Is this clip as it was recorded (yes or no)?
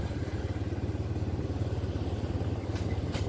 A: yes